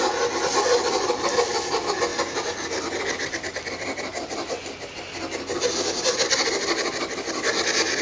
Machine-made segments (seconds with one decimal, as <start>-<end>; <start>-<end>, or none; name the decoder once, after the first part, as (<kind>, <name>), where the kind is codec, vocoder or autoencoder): none